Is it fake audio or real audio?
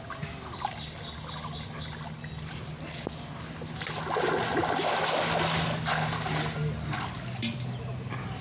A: real